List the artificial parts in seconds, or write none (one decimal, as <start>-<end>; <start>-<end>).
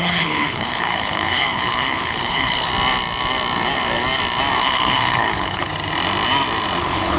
0.0-2.7; 4.6-5.7; 6.8-7.2